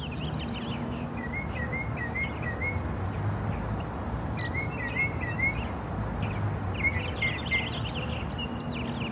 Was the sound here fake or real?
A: real